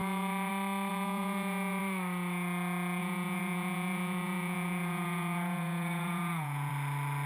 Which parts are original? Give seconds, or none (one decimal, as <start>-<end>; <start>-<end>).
0.5-0.9; 1.8-3.0; 6.7-7.3